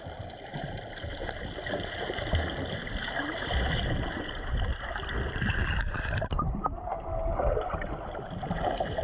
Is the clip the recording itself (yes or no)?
yes